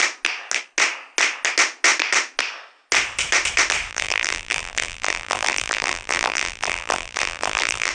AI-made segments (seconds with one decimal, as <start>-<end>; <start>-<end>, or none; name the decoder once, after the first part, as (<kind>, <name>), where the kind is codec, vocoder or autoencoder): 3.9-7.9 (vocoder, BigVGAN v2)